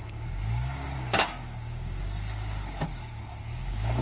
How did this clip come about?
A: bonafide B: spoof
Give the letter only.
B